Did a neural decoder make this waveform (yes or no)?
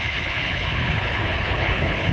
yes